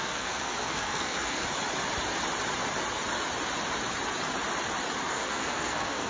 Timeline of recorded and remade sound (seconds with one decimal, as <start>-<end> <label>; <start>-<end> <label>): 0.0-1.4 remade; 1.4-5.1 recorded; 5.1-6.1 remade